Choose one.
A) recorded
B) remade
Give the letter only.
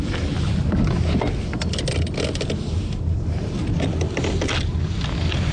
A